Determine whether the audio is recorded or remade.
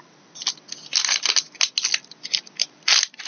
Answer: recorded